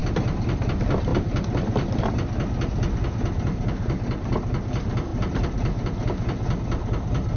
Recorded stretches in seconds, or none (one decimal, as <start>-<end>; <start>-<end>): 0.0-7.4